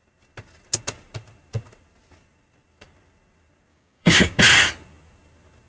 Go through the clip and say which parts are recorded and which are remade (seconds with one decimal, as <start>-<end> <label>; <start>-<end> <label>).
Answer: 0.0-3.7 recorded; 3.7-4.4 remade; 4.4-5.7 recorded